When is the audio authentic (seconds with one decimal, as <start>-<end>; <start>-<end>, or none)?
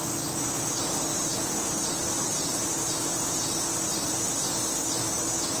0.0-1.3; 4.7-5.6